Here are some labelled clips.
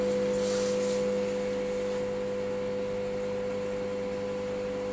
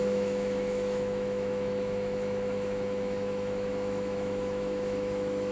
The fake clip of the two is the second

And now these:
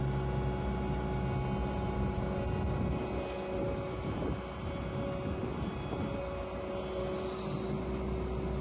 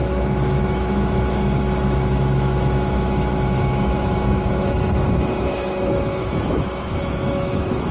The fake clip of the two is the second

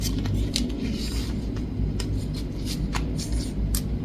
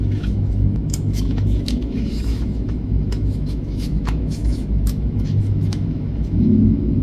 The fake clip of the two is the second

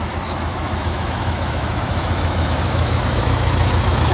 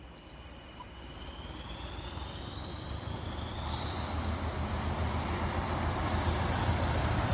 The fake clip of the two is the first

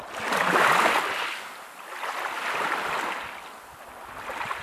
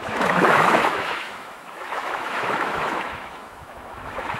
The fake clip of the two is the second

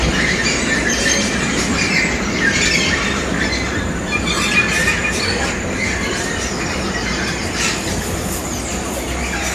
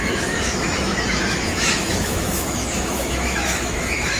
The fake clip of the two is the second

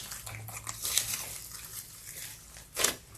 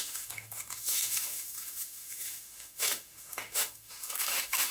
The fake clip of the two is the second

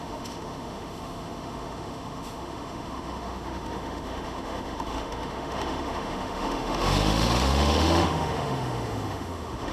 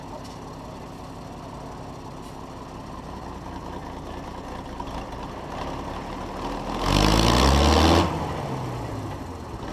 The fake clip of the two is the first